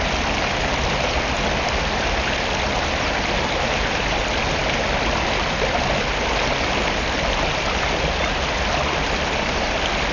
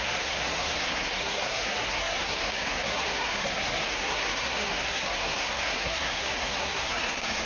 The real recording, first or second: first